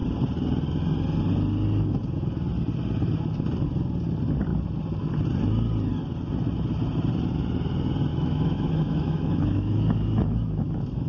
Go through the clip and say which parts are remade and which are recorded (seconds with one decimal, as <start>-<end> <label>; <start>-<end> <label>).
0.0-8.1 recorded; 8.1-11.1 remade